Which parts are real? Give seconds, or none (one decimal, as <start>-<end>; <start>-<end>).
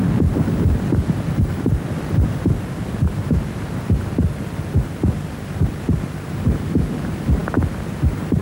0.0-0.9; 5.7-8.4